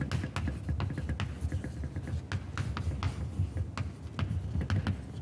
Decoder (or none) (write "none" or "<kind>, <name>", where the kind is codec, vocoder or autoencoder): none